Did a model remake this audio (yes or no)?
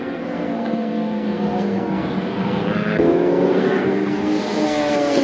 yes